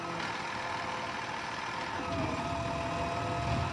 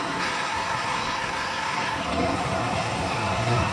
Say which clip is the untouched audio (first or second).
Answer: first